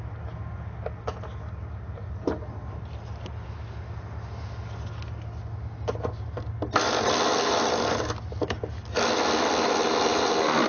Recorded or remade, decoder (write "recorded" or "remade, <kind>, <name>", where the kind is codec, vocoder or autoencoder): recorded